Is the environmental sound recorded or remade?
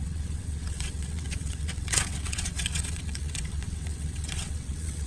remade